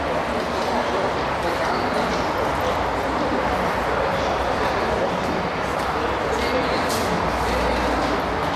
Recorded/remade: recorded